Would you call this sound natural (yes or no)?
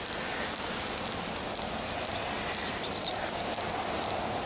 yes